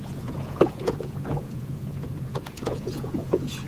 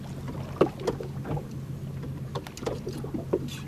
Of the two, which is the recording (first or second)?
second